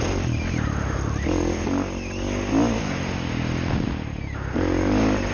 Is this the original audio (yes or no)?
yes